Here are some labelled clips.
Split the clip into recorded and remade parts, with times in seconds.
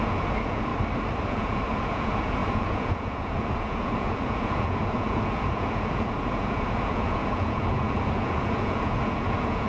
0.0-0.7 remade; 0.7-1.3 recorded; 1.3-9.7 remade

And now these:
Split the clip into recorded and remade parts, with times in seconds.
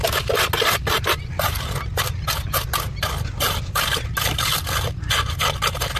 0.0-6.0 recorded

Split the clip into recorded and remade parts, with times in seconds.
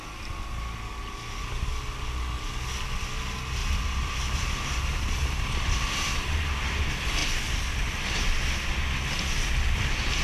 0.0-3.6 recorded; 3.6-6.8 remade; 6.8-10.2 recorded